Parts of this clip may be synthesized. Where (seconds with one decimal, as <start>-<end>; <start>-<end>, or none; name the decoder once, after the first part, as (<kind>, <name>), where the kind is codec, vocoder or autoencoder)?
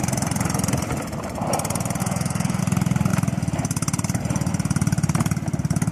2.0-2.6 (codec, SNAC)